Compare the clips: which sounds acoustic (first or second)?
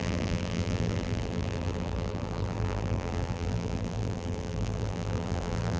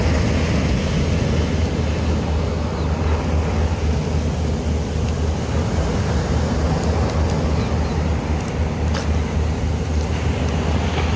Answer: second